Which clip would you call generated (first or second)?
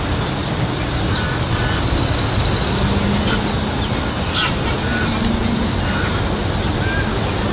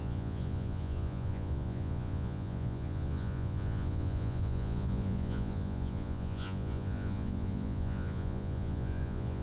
second